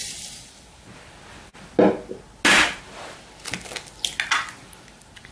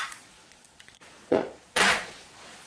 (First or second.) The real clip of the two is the first